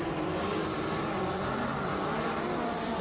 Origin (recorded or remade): remade